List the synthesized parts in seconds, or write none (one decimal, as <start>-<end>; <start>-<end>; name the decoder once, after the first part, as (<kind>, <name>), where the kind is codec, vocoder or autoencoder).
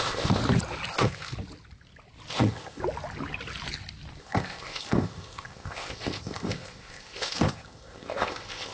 0.0-0.4 (codec, ZipCodec); 0.9-1.3; 2.3-2.8; 4.2-8.7